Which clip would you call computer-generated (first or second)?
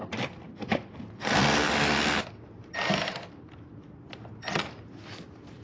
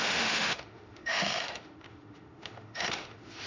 second